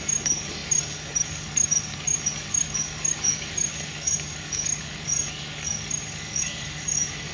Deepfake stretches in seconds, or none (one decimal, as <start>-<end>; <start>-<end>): 0.0-7.3

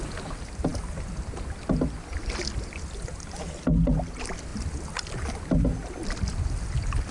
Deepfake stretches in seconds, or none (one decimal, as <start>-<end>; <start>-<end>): none

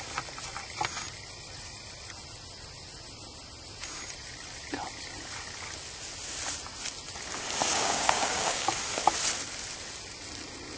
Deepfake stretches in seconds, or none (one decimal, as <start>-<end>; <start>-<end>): 7.7-8.7